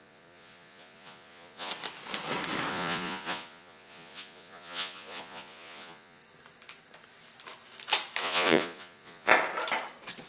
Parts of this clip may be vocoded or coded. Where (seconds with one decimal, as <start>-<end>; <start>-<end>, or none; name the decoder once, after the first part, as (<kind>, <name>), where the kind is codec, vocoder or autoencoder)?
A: 0.0-1.7 (vocoder, Vocos); 2.7-6.2; 8.2-9.3